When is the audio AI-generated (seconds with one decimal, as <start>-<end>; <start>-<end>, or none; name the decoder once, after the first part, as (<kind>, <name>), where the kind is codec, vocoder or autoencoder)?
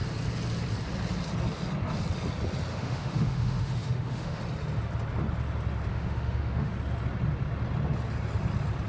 2.7-4.4 (autoencoder, DAC-VAE); 5.9-6.7